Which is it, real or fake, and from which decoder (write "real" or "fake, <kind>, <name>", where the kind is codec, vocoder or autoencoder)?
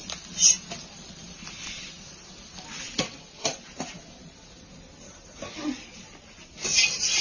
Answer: real